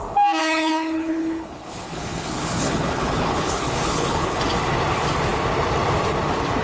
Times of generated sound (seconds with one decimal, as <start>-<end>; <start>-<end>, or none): 0.4-4.4